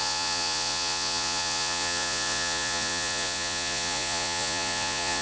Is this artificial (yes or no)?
yes